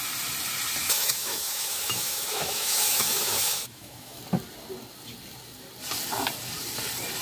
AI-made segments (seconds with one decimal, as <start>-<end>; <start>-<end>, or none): 0.8-4.2